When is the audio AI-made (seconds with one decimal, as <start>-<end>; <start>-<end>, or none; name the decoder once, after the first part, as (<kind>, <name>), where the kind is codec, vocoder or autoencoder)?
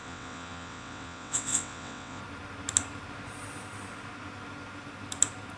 0.0-2.2 (vocoder, WaveNeXt)